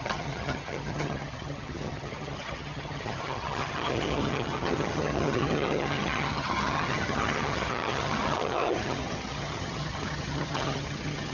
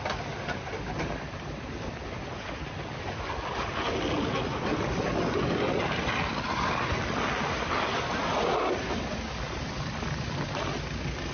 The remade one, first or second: first